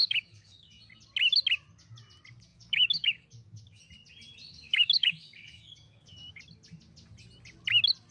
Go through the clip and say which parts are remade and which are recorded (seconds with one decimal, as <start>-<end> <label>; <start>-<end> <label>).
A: 0.0-0.8 remade; 0.8-2.5 recorded; 2.5-3.8 remade; 3.8-4.5 recorded; 4.5-6.4 remade; 6.4-8.1 recorded